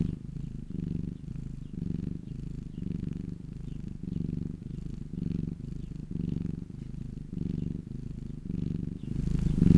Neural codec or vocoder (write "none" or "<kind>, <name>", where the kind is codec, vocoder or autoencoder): none